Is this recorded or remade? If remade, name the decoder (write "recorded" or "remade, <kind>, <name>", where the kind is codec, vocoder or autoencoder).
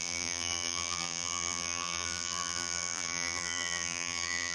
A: remade, vocoder, BigVGAN v2